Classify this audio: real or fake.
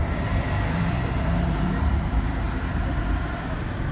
fake